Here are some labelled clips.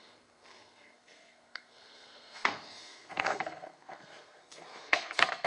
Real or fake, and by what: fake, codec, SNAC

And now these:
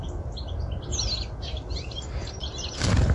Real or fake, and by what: real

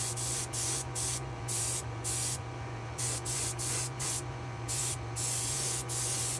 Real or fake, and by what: fake, vocoder, Vocos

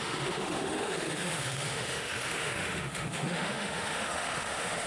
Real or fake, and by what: fake, autoencoder, DAC-VAE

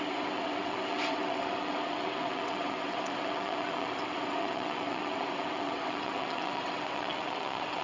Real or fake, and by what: fake, vocoder, WaveNeXt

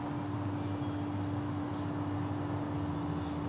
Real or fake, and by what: real